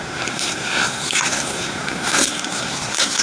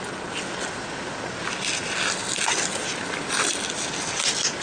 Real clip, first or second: second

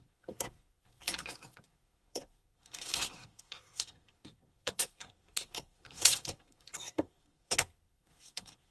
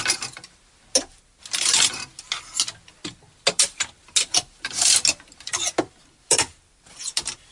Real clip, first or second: second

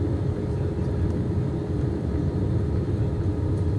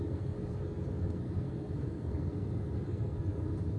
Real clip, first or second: first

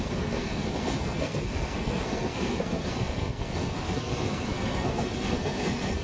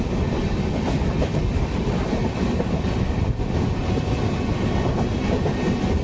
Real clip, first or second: second